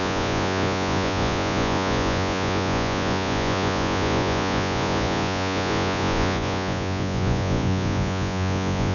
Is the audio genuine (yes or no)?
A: no